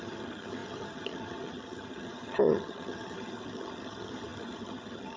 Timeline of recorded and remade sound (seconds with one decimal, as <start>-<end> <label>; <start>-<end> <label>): 0.0-5.2 remade